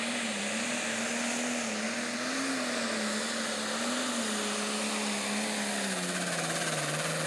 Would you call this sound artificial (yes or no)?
no